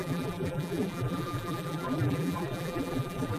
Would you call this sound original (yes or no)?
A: no